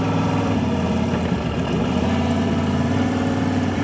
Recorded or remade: remade